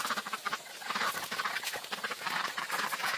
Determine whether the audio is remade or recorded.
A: recorded